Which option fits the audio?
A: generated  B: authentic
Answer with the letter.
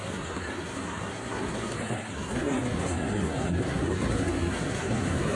A